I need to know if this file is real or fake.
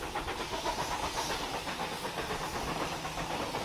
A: real